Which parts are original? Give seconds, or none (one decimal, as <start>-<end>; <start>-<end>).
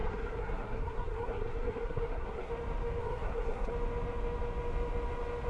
2.5-3.0; 3.7-5.5